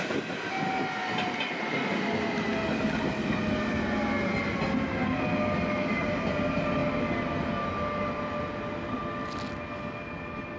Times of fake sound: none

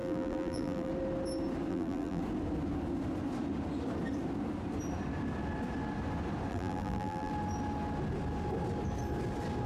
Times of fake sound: 0.0-0.9 (vocoder, BigVGAN v2); 1.7-2.2; 6.5-7.3

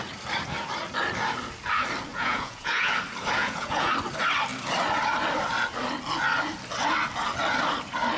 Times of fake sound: 2.1-2.9 (vocoder, Vocos); 3.4-3.9

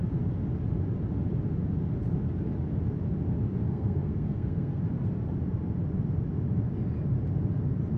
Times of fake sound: 3.6-4.8 (codec, SNAC)

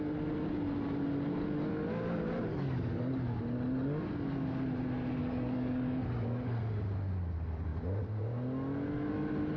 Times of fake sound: 2.5-3.1 (codec, DAC); 5.2-6.0

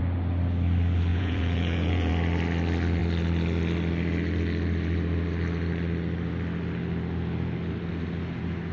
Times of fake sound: 1.1-2.1 (vocoder, Vocos)

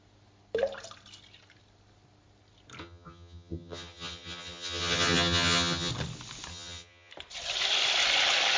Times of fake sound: 2.8-5.9 (vocoder, HiFi-GAN); 6.5-7.1